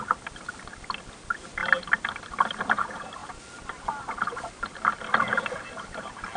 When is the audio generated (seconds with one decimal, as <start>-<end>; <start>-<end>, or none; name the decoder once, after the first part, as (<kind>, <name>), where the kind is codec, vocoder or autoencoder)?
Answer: none